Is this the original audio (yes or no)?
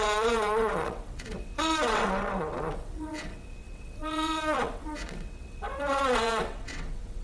no